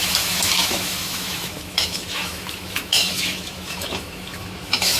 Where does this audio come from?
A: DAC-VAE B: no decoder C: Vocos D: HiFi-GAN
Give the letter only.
A